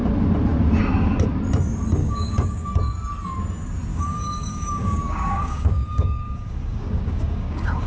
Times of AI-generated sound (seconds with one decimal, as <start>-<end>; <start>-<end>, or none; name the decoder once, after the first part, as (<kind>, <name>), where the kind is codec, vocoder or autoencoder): 2.0-2.8 (codec, DAC); 3.9-7.9